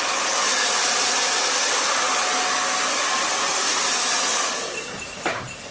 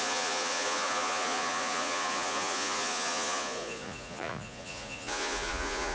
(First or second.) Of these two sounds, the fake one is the second